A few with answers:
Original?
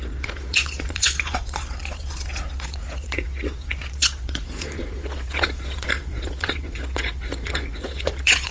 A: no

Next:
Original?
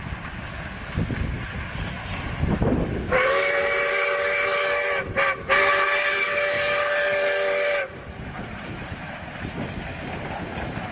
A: yes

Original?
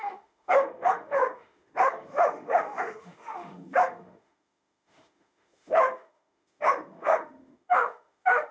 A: no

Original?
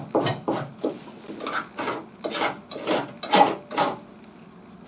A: yes